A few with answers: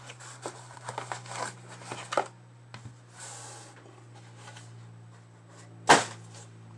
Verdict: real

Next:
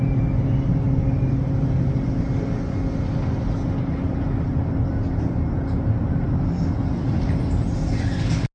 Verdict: real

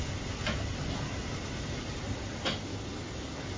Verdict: real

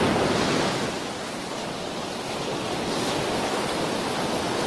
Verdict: real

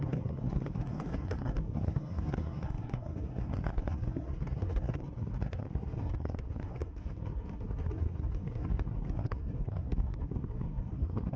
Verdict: fake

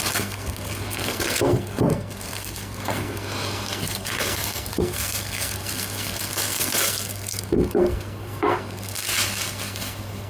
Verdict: fake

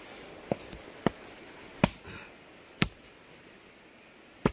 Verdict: real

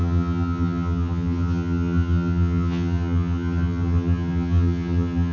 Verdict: fake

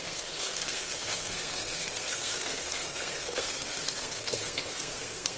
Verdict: fake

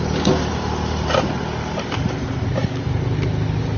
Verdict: real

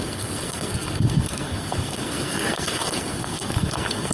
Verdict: fake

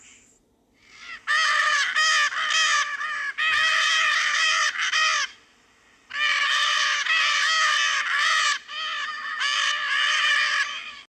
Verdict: real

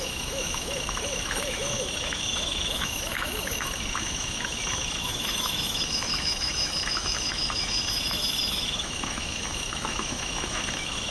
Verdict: fake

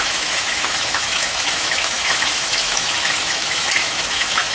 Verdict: fake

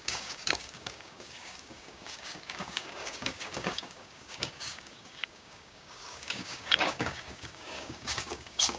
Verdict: fake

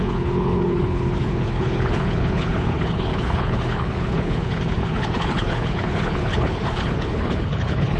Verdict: fake